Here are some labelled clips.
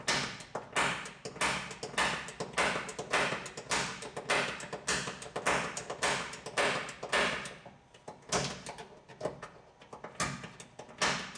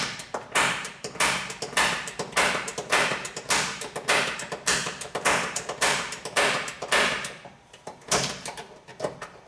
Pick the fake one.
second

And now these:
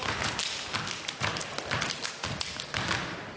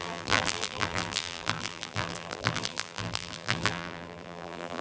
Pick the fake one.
second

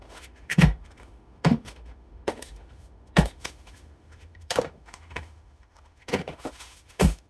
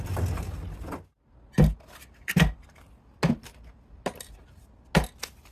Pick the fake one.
first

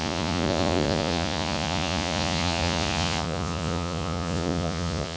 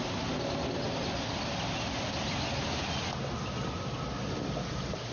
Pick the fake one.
first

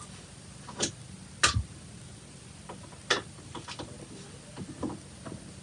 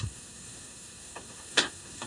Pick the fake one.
second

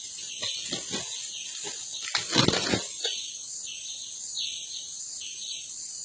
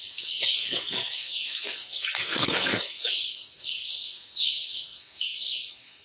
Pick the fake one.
second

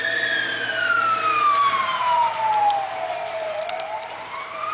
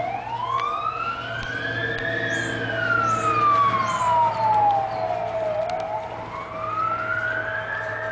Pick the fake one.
first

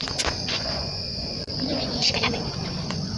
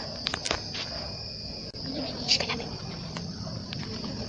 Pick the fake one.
first